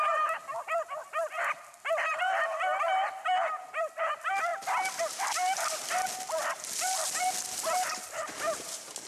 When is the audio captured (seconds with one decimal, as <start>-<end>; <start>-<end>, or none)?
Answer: 0.0-9.1